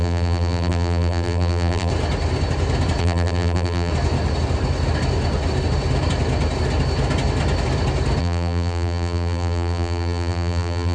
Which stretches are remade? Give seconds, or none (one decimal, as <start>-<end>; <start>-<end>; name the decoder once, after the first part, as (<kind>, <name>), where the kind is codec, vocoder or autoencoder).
0.0-1.9 (vocoder, BigVGAN v2); 3.0-3.9; 8.2-10.9